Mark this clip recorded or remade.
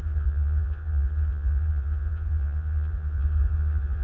remade